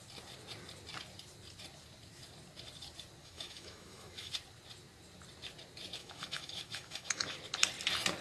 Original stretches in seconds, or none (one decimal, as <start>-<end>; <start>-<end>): 0.0-3.2; 4.3-6.0; 7.4-8.2